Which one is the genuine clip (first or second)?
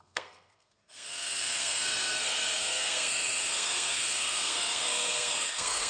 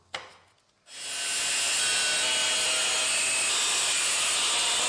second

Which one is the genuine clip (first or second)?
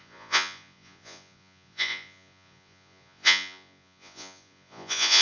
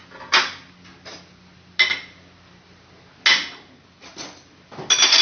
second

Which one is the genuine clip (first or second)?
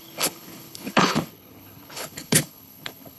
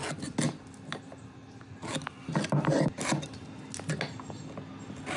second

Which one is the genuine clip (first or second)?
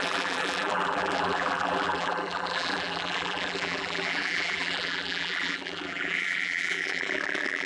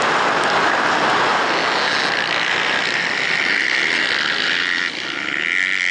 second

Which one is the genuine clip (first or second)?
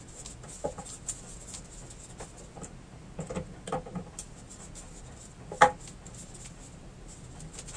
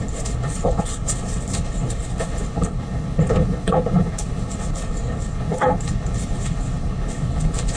first